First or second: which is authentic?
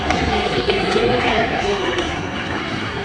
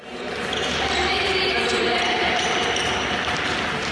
second